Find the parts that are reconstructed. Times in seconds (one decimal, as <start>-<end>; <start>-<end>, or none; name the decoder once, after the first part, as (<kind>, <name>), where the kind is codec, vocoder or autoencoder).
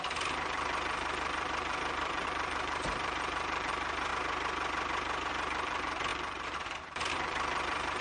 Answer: 0.0-4.1 (vocoder, BigVGAN v2); 5.3-8.0